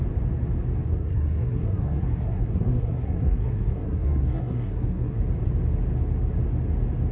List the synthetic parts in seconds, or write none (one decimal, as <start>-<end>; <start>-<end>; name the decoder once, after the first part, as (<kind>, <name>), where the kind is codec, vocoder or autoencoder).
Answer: 0.9-5.2 (codec, SNAC)